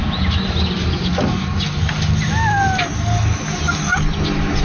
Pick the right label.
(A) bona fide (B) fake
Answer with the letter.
A